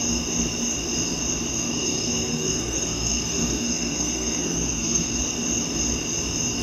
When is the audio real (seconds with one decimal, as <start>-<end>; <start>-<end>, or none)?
0.0-1.5; 5.2-6.6